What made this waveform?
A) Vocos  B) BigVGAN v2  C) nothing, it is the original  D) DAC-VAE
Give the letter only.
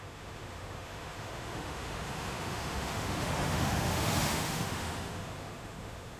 D